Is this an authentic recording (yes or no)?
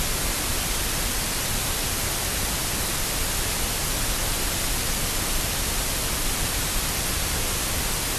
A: no